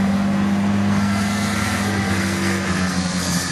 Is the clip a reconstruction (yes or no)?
yes